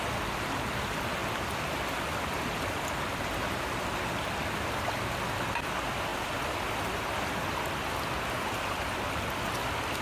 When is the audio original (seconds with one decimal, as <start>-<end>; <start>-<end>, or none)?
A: 0.0-10.0